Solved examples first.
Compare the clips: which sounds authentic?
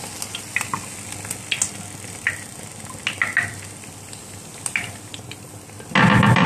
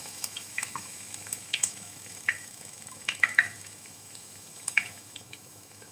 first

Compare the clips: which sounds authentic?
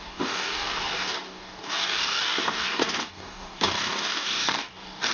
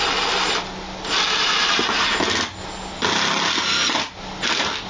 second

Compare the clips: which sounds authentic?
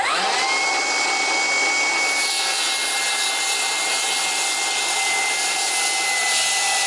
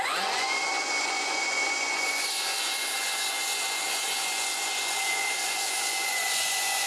first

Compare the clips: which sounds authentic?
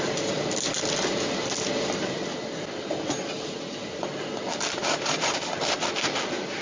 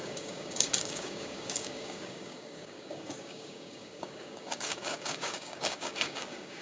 first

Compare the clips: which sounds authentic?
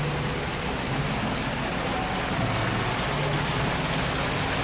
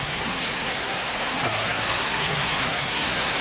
first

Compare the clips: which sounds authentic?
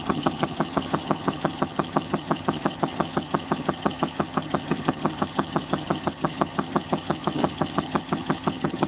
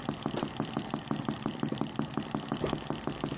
second